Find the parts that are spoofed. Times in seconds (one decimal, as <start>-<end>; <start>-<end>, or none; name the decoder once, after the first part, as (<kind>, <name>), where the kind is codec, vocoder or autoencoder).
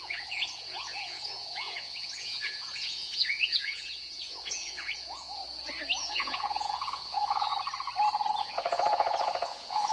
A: 0.0-5.4 (vocoder, Vocos); 6.0-7.5; 8.4-9.9